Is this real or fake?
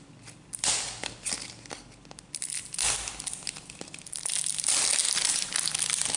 real